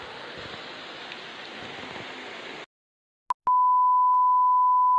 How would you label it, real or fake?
real